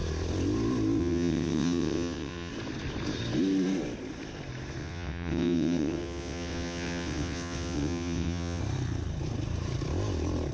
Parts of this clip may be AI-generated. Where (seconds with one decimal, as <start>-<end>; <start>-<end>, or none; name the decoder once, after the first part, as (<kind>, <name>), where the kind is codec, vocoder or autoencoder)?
1.0-2.5 (vocoder, WaveNeXt); 4.8-8.6